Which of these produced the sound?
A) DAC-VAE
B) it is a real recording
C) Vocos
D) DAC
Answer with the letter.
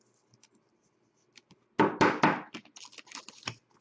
B